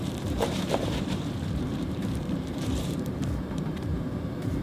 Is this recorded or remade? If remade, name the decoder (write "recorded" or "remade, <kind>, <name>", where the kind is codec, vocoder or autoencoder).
remade, vocoder, BigVGAN v2